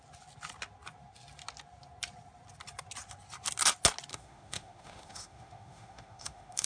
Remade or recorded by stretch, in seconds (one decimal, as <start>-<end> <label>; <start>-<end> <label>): 0.0-4.1 recorded; 4.1-6.7 remade